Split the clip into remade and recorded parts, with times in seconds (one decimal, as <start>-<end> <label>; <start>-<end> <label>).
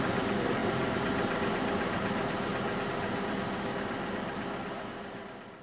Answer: 0.0-5.6 recorded